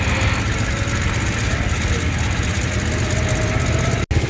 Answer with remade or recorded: recorded